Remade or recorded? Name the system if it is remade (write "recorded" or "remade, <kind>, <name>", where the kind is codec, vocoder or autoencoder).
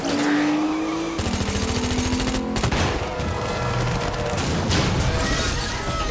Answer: recorded